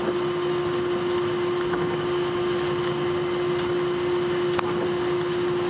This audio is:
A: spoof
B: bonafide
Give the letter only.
B